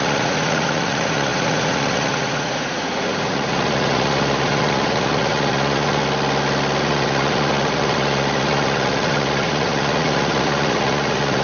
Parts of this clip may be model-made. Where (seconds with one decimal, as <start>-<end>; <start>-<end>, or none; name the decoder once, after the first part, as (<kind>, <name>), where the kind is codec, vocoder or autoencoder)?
0.0-6.0 (vocoder, Vocos); 6.8-11.4